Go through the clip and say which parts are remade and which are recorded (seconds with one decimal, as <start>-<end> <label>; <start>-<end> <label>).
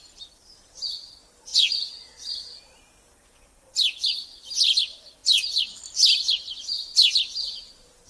0.0-1.5 recorded; 1.5-2.6 remade; 2.6-8.1 recorded